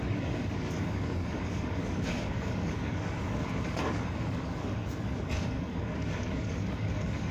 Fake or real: fake